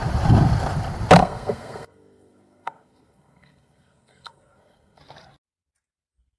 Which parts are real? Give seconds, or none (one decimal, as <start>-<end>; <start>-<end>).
0.0-1.2; 5.0-6.4